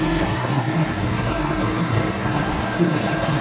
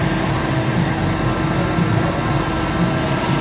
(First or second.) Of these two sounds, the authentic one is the second